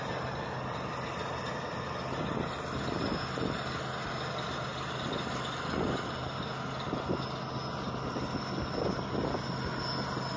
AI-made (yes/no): no